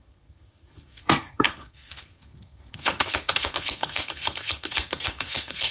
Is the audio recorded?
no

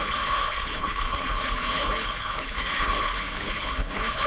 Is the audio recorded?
no